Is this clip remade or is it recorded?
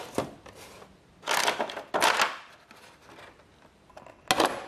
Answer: recorded